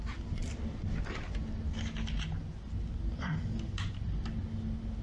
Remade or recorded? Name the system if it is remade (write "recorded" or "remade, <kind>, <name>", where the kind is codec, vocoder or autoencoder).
recorded